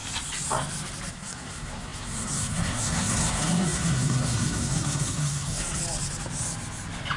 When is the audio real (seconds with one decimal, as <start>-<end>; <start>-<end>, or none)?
0.0-1.1; 5.8-7.2